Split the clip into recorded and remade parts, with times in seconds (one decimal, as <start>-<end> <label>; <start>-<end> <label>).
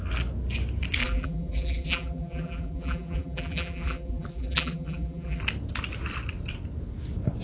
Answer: 0.0-1.0 recorded; 1.0-5.4 remade; 5.4-7.4 recorded